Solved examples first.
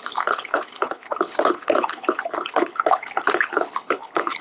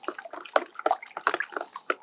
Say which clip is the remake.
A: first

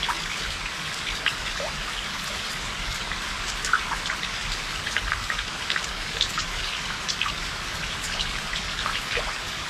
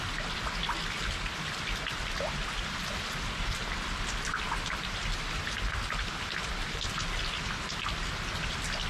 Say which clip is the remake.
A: first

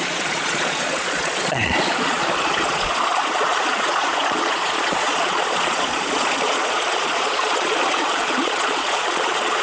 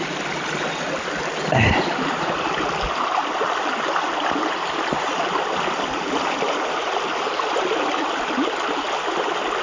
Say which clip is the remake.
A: first